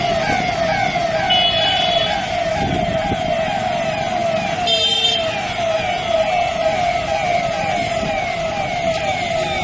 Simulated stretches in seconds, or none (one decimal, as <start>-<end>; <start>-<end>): none